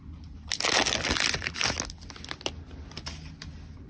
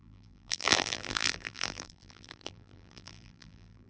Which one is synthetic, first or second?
second